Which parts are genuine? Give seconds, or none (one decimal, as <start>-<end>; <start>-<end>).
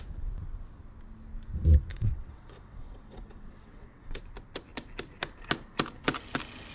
0.0-1.9; 4.2-6.7